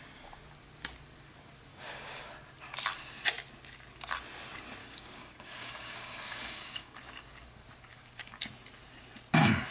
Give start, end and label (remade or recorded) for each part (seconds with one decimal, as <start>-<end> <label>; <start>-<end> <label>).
0.0-1.7 recorded; 1.7-2.3 remade; 2.3-4.8 recorded; 4.8-7.0 remade; 7.0-7.9 recorded; 7.9-8.4 remade; 8.4-9.7 recorded